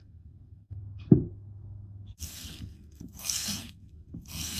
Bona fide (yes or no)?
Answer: no